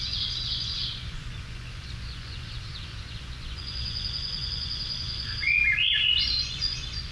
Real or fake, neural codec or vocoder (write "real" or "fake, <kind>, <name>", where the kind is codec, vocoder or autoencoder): fake, vocoder, Vocos